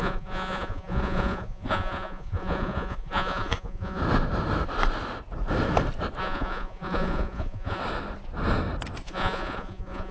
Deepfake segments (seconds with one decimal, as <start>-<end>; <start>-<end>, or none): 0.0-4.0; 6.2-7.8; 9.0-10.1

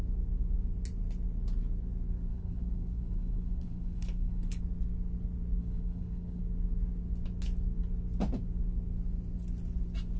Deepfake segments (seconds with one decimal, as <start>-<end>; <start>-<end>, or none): 2.3-4.6; 5.6-6.4

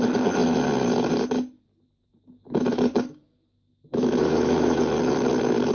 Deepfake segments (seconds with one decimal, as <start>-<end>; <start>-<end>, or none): 1.7-4.8